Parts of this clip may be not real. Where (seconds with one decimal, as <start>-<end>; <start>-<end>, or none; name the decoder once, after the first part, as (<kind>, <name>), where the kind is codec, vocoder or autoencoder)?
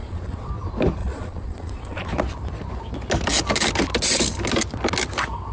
0.0-0.5 (vocoder, Vocos); 1.0-2.1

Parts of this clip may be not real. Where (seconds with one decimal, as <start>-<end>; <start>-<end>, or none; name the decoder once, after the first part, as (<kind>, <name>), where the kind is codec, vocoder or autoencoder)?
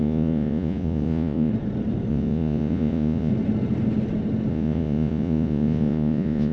0.0-1.5 (vocoder, Vocos); 2.1-3.3; 4.5-6.5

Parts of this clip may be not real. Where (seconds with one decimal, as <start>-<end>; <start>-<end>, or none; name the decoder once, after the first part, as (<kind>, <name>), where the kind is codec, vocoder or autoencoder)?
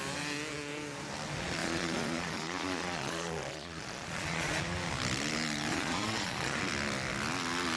1.6-4.6 (vocoder, Vocos); 5.7-6.6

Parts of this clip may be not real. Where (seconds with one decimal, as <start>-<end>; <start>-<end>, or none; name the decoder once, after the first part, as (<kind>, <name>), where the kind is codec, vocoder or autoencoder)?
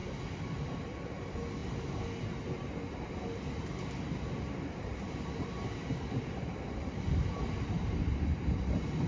none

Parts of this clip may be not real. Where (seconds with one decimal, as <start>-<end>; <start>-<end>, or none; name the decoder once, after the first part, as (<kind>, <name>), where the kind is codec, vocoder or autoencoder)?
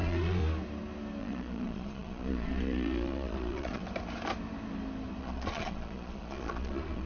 0.0-0.4 (vocoder, Vocos); 1.2-3.8; 5.2-7.1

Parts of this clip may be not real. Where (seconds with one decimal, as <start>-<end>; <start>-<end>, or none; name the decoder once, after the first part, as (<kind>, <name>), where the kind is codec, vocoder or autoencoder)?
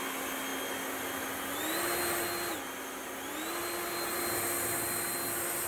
none